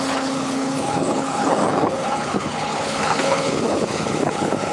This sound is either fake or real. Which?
fake